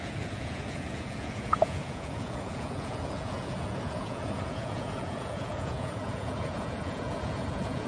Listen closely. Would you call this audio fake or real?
fake